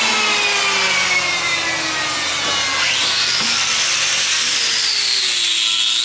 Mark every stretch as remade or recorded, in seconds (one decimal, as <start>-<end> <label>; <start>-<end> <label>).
0.0-3.0 recorded; 3.0-4.9 remade; 4.9-6.0 recorded